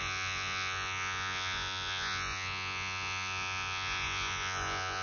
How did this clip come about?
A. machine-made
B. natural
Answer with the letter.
A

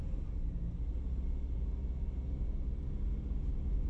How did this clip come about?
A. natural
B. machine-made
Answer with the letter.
A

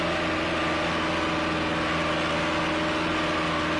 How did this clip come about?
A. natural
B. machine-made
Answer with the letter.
A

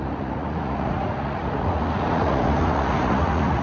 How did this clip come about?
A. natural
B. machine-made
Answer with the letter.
B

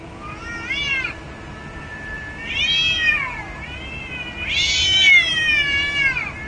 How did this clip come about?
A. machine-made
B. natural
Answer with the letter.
B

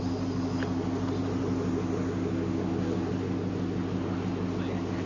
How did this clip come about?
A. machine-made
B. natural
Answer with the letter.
B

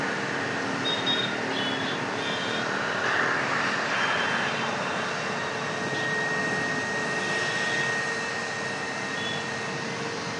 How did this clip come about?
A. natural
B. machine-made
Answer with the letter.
A